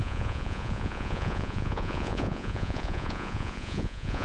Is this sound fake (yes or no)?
yes